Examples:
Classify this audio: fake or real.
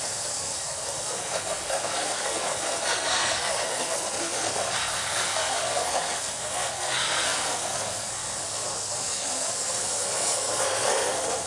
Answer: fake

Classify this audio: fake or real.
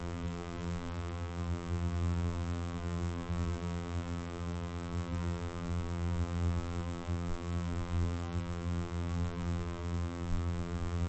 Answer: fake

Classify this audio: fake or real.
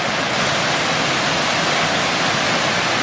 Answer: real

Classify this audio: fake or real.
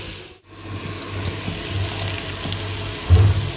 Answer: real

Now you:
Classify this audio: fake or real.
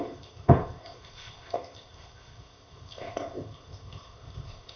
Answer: fake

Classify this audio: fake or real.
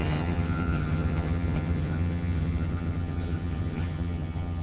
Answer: fake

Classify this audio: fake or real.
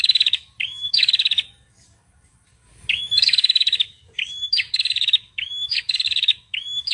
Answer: fake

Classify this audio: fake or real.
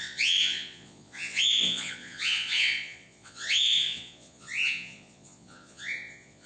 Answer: fake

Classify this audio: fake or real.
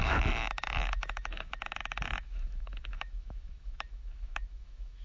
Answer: fake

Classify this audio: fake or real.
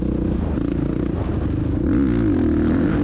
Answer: real